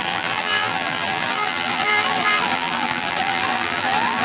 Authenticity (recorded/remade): remade